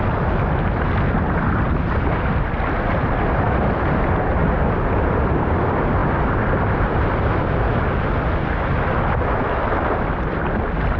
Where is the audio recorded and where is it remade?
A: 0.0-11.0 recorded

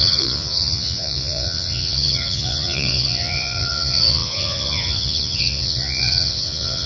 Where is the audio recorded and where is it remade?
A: 0.0-6.9 remade

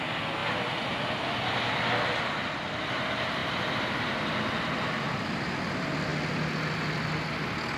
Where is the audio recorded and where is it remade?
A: 0.0-7.8 recorded